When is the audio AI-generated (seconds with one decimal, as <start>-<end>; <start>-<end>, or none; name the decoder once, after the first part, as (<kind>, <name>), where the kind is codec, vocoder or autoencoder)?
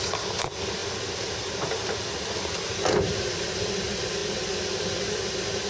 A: none